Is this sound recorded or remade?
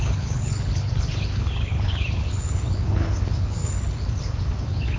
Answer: remade